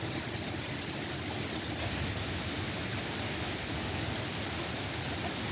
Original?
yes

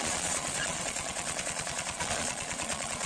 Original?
no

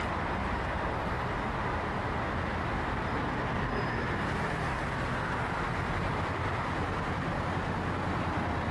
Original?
yes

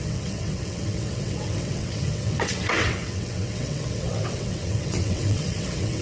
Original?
no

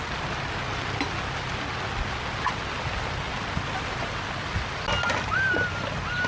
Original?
yes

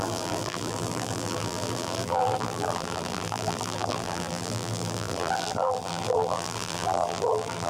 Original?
no